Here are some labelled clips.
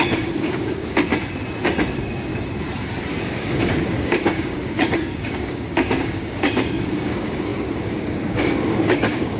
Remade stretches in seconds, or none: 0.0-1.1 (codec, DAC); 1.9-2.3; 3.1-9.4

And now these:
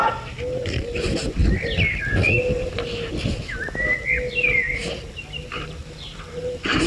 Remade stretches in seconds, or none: none

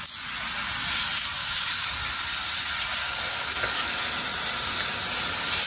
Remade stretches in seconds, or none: 1.4-2.0 (codec, DAC); 3.0-4.1

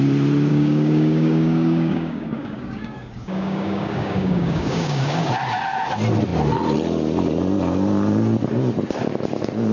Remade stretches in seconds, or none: 0.5-5.3 (codec, DAC)

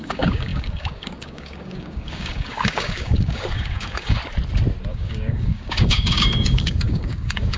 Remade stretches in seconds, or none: 0.0-4.2 (codec, DAC); 4.9-7.6